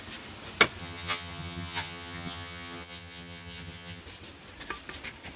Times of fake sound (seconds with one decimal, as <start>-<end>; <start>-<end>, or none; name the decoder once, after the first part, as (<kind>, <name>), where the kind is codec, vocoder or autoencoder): 0.8-4.0 (vocoder, HiFi-GAN)